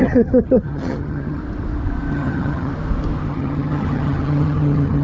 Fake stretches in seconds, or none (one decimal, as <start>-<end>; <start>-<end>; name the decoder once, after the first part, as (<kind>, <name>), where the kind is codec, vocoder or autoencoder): 0.0-1.4 (vocoder, HiFi-GAN); 2.1-2.7; 3.3-5.0